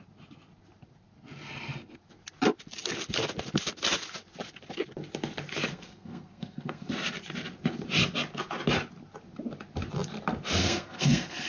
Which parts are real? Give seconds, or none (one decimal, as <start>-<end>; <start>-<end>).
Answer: 0.0-5.7; 6.9-10.6